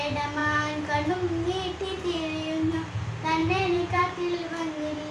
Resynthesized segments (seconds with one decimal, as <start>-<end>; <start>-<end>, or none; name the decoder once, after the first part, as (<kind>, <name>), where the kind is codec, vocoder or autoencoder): 3.4-4.0 (vocoder, Vocos)